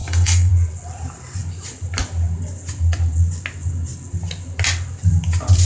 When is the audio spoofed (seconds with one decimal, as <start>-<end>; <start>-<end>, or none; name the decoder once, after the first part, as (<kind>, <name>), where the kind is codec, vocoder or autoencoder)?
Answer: 0.0-0.5 (codec, SNAC)